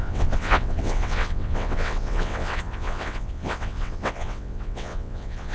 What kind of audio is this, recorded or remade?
remade